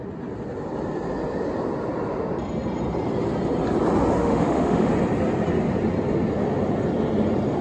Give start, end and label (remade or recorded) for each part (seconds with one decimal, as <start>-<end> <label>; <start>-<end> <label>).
0.0-4.2 recorded; 4.2-4.9 remade; 4.9-7.6 recorded